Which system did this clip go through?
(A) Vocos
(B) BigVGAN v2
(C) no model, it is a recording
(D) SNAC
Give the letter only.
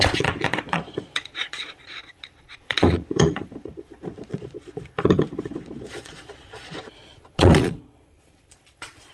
A